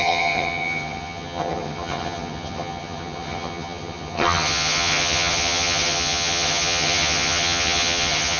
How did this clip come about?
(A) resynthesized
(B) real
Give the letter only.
A